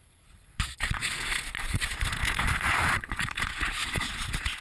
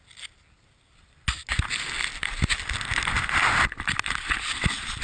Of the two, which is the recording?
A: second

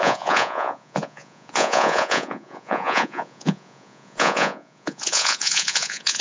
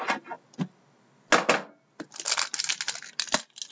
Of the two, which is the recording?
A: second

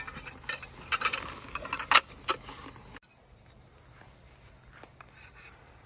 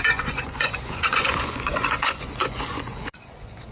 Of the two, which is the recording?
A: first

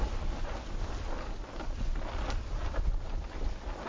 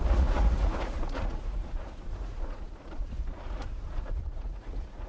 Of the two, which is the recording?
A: first